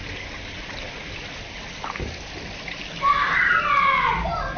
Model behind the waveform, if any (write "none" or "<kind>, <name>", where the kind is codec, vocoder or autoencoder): none